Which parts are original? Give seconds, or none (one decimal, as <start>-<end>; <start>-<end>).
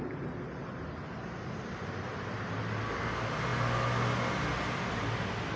0.0-5.6